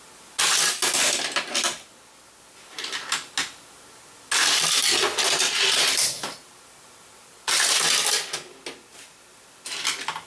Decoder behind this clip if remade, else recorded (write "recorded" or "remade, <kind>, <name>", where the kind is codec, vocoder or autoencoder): recorded